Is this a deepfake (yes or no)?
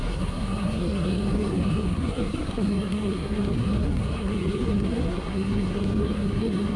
yes